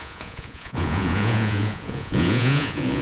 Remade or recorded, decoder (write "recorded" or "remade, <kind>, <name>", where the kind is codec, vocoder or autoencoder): remade, vocoder, Vocos